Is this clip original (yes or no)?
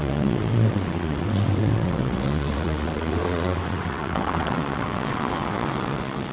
no